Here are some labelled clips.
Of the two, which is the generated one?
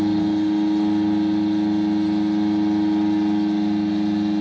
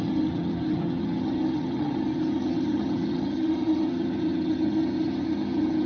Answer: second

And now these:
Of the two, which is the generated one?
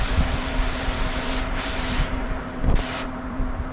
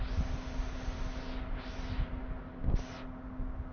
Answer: first